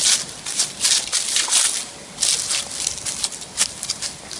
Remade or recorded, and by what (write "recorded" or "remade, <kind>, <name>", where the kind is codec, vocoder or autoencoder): recorded